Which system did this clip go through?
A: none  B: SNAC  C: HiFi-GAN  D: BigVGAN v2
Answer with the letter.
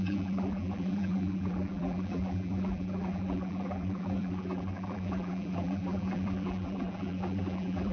D